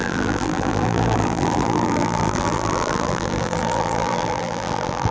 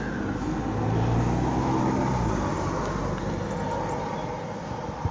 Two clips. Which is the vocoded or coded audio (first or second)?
first